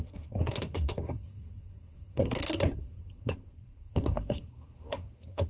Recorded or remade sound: remade